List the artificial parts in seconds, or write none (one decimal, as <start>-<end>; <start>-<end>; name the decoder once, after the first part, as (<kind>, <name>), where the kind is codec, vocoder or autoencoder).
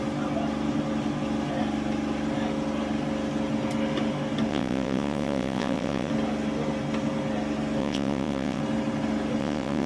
4.5-6.1 (vocoder, WaveNeXt); 7.8-8.6; 9.4-9.9